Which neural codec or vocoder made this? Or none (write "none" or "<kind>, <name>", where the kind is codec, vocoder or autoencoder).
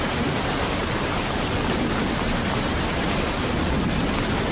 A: none